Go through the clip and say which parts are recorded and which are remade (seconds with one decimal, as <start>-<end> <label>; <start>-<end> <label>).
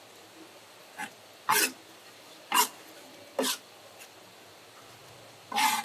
0.0-5.8 recorded